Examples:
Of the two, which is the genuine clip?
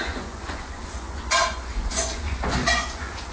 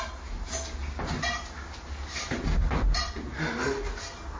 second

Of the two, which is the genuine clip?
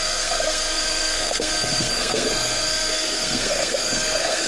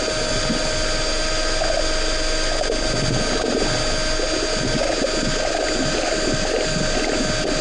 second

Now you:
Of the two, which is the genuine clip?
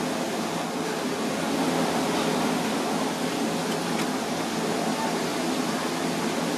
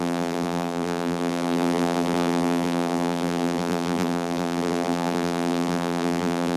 first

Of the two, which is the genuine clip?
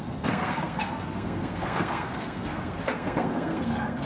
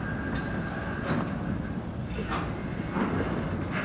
second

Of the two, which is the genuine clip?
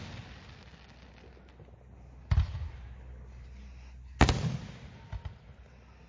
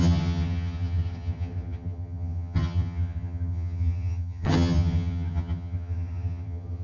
first